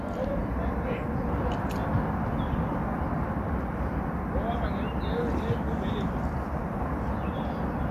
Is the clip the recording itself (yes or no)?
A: yes